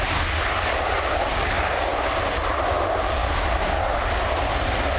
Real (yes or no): yes